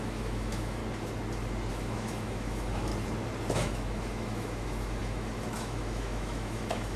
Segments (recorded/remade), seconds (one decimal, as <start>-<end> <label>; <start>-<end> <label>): 0.0-0.8 remade; 0.8-1.7 recorded; 1.7-2.9 remade; 2.9-3.5 recorded; 3.5-7.0 remade